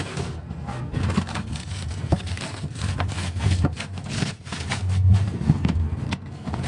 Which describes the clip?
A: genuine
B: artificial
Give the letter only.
B